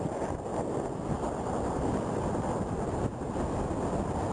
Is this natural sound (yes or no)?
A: yes